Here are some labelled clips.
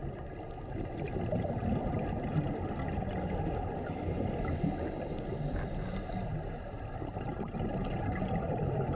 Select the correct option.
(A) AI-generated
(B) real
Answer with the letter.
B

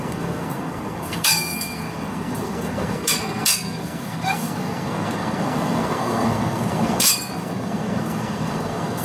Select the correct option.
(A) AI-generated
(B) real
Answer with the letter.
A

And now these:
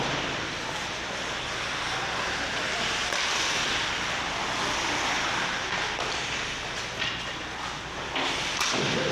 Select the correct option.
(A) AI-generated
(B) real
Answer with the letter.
B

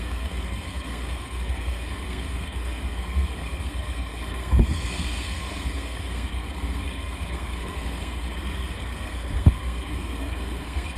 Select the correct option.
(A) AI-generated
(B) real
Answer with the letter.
A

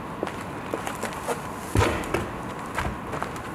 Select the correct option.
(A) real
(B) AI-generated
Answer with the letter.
A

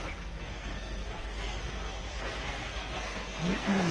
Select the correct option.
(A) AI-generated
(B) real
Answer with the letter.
A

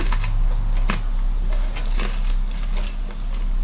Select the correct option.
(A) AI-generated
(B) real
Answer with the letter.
B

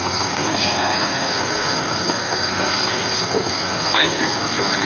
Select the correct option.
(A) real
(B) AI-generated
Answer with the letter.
B